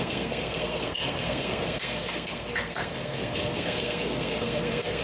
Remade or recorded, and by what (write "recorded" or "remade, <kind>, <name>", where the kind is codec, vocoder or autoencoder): remade, codec, SNAC